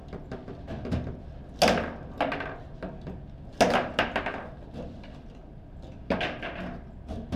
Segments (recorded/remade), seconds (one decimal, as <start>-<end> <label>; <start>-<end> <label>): 0.0-7.4 recorded